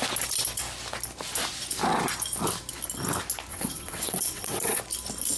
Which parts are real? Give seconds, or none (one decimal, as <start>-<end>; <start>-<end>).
0.0-3.5; 4.8-5.4